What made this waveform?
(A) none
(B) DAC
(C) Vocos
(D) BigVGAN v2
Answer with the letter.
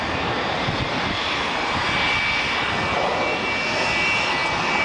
A